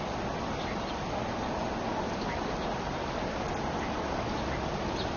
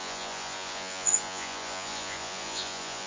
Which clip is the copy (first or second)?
second